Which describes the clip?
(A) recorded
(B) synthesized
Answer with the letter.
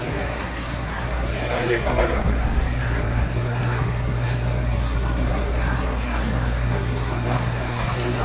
B